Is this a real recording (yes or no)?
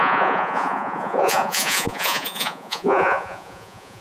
no